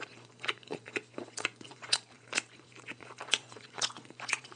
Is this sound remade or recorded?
remade